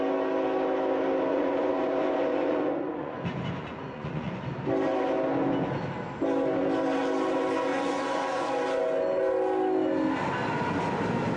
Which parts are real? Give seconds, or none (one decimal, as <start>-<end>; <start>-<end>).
0.0-1.3; 4.4-7.7; 8.5-11.4

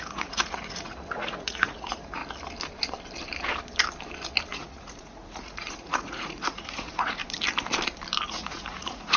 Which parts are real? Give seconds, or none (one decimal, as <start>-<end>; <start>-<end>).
2.2-4.5; 7.2-8.3

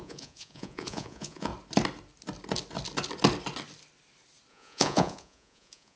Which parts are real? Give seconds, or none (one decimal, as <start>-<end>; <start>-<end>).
1.5-4.5